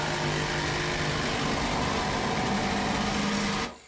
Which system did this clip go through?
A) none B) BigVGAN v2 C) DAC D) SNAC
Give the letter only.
A